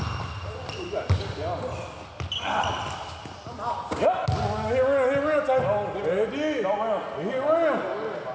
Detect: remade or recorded recorded